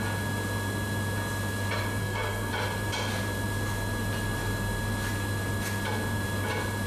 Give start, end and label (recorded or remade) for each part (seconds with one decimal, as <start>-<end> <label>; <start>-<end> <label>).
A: 0.0-2.0 recorded; 2.0-2.5 remade; 2.5-6.9 recorded